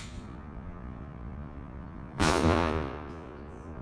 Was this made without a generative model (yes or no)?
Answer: no